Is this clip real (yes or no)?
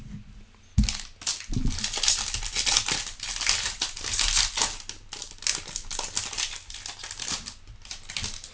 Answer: yes